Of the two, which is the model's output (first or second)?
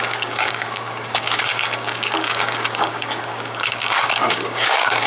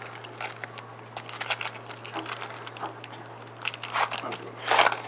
first